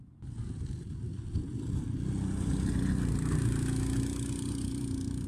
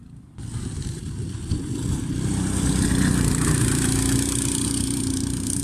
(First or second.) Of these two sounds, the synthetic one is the second